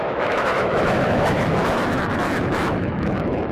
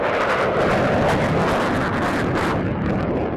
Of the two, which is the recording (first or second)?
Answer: second